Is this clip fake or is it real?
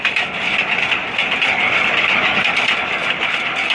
real